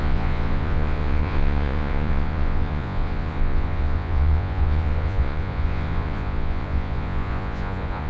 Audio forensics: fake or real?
fake